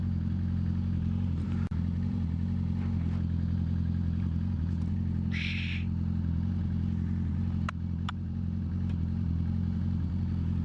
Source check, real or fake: fake